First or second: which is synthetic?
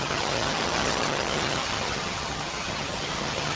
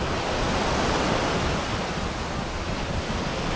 first